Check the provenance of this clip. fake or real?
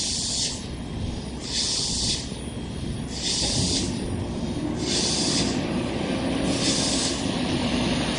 real